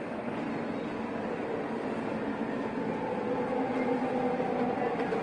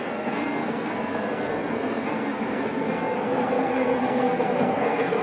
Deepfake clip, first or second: second